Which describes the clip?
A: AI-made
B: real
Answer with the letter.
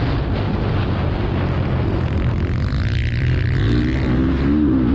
B